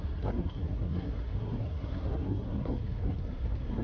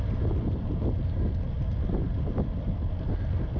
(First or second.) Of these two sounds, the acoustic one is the second